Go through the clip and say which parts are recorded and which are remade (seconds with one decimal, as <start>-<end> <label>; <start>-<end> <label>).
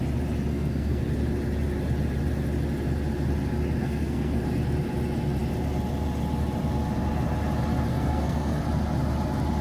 0.0-0.5 recorded; 0.5-1.0 remade; 1.0-3.8 recorded; 3.8-4.4 remade; 4.4-7.9 recorded; 7.9-8.6 remade; 8.6-9.6 recorded